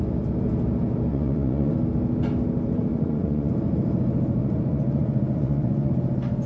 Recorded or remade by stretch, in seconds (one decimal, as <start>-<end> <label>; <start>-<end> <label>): 0.0-1.1 recorded; 1.1-1.7 remade; 1.7-2.9 recorded; 2.9-3.5 remade; 3.5-4.4 recorded; 4.4-5.9 remade; 5.9-6.5 recorded